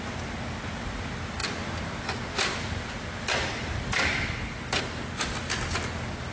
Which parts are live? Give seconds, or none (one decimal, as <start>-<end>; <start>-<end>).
0.0-6.3